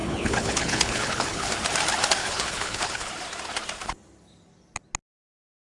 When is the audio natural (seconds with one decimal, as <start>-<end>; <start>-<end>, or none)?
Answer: 1.5-2.2; 3.1-5.8